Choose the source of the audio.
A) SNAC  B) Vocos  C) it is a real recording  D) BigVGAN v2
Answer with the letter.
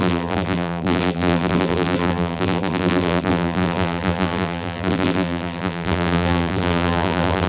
D